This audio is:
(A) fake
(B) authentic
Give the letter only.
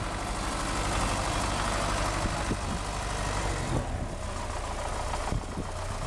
B